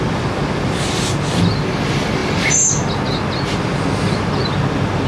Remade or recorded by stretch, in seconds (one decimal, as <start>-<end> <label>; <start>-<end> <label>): 0.0-5.1 recorded